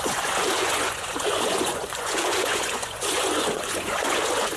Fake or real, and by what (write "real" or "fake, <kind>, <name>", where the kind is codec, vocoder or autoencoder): fake, vocoder, Vocos